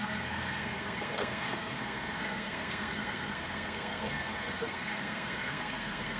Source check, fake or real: fake